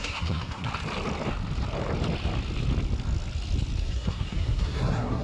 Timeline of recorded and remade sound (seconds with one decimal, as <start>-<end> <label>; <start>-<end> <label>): 0.0-0.7 remade; 0.7-3.8 recorded; 3.8-5.2 remade